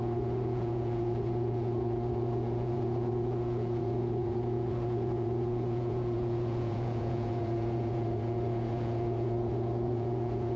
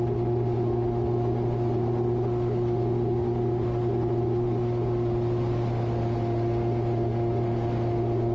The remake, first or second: first